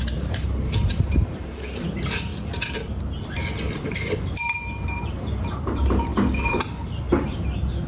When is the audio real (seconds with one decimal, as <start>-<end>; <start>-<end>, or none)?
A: 2.3-3.9; 6.1-7.1